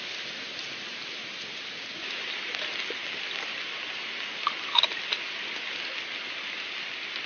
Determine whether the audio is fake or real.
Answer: real